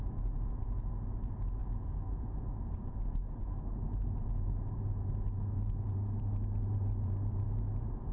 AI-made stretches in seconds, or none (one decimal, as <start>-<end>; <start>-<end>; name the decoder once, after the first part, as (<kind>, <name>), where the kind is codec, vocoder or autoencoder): 0.0-8.1 (vocoder, Vocos)